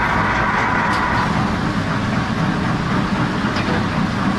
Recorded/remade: recorded